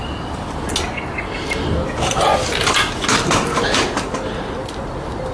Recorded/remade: recorded